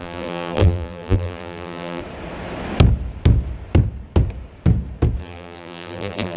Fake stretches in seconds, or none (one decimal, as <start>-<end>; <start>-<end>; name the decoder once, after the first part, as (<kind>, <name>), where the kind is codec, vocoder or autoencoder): 0.0-2.0 (vocoder, BigVGAN v2); 5.2-6.4